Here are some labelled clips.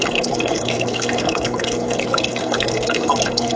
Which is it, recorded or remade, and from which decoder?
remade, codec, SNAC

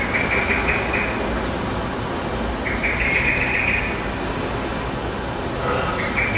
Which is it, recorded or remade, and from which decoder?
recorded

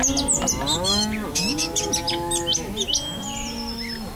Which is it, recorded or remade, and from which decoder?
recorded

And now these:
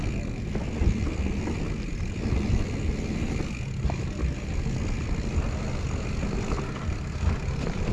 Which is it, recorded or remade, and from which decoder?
recorded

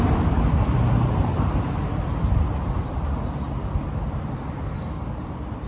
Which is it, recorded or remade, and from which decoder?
recorded